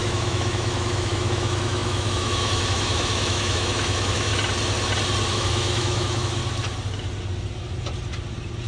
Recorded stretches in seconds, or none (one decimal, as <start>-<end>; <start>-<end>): 4.3-5.3; 6.4-8.7